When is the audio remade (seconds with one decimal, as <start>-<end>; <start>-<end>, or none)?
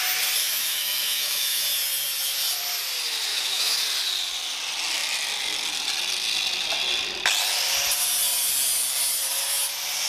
0.4-1.6; 3.3-3.8